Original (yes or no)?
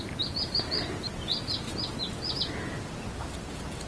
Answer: yes